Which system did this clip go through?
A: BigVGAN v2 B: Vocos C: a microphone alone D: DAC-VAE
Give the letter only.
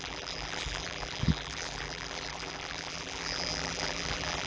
A